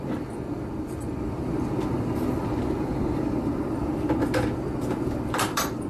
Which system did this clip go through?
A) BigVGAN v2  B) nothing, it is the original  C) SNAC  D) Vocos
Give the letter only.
A